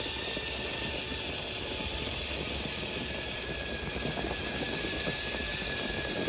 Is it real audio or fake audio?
real